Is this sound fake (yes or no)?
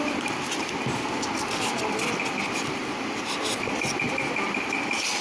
no